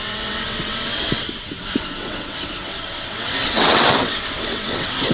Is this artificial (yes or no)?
yes